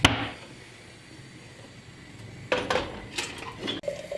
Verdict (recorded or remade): recorded